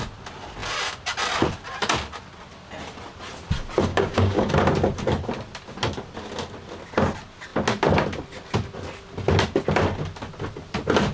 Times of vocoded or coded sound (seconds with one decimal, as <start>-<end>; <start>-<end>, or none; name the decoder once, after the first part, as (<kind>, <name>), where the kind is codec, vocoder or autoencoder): 3.9-4.5 (codec, DAC)